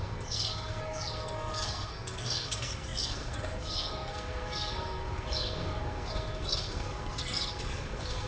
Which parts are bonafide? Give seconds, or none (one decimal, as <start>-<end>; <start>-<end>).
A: none